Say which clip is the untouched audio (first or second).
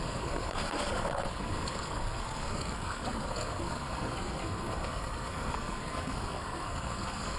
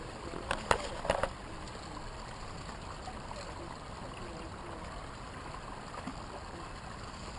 second